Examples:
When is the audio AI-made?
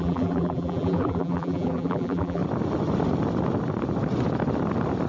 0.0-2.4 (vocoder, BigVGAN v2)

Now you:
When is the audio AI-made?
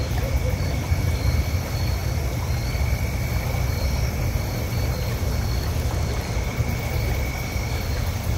none